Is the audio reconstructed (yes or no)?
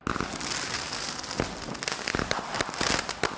no